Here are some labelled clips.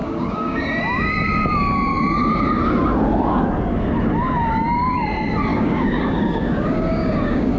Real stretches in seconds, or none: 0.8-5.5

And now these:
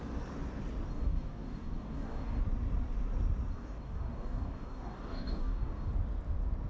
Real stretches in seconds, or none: 0.0-0.9; 2.4-3.5; 5.9-6.7

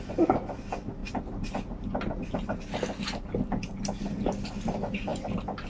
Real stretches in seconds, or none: 0.0-5.7

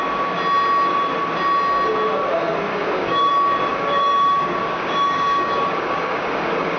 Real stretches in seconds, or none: 0.0-2.7; 3.3-3.7

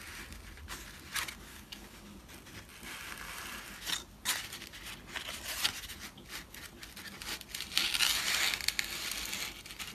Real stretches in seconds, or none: 0.0-1.5; 2.2-9.9

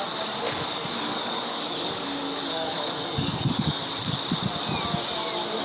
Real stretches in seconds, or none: 0.0-0.4; 3.8-5.6

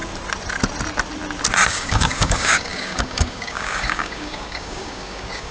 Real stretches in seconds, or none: 0.0-1.7